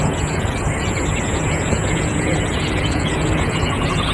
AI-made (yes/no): yes